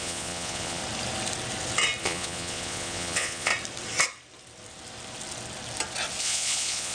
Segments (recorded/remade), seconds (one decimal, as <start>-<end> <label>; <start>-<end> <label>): 0.0-0.8 remade; 0.8-2.0 recorded; 2.0-3.5 remade; 3.5-6.2 recorded; 6.2-6.9 remade